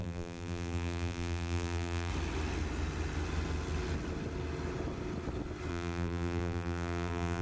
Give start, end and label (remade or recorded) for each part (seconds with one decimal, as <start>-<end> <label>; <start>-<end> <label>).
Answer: 0.0-2.1 remade; 2.1-5.7 recorded; 5.7-7.4 remade